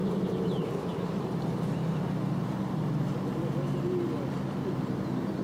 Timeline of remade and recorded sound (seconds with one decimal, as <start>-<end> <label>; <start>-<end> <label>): 0.0-3.2 remade; 3.2-5.4 recorded